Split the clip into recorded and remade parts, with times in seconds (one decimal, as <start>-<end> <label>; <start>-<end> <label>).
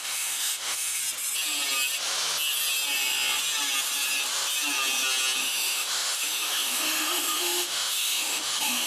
0.0-1.0 remade; 1.0-5.4 recorded; 5.4-8.9 remade